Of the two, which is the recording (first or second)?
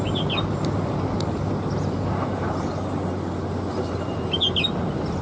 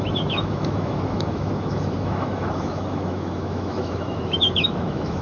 first